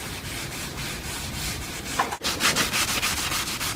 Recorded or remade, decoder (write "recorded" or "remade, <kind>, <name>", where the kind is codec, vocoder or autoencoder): recorded